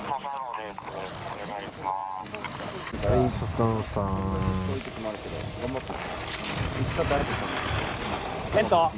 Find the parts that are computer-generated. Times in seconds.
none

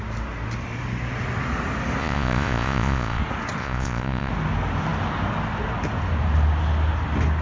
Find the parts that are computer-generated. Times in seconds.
2.0-3.2 (vocoder, Vocos); 3.6-4.3

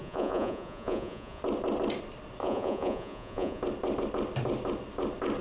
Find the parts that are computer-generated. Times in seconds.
0.0-1.4 (vocoder, Vocos); 2.4-3.6

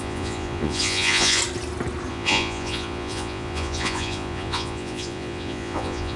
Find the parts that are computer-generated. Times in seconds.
0.0-1.4 (vocoder, Vocos); 2.1-6.2

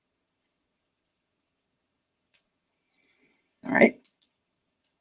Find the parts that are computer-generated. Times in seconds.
0.0-5.0 (vocoder, Vocos)

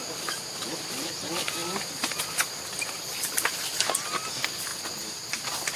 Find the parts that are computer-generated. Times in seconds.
none

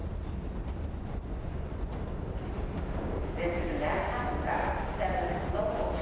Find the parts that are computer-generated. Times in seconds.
0.9-1.9 (vocoder, Vocos); 5.5-6.0

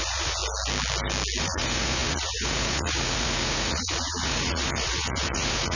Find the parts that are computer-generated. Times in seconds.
0.0-0.4 (vocoder, Vocos); 1.4-5.8